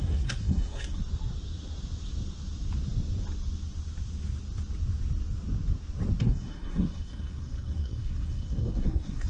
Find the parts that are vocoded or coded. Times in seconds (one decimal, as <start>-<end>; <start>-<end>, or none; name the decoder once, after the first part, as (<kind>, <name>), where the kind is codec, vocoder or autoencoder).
0.0-1.0 (codec, SNAC); 6.2-9.3